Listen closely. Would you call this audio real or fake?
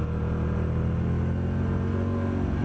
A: real